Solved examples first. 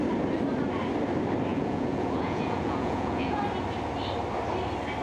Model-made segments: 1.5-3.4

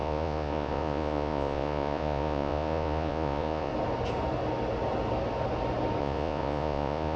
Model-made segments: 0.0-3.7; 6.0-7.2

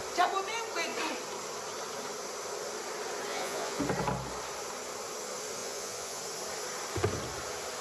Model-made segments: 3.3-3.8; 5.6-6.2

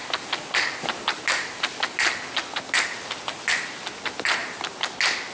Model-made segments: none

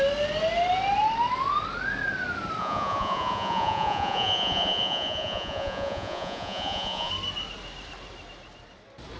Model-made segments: 2.6-7.1